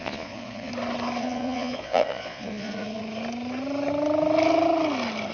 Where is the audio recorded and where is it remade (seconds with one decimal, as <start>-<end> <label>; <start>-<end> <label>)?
0.0-0.7 remade; 0.7-1.2 recorded; 1.2-3.0 remade; 3.0-5.3 recorded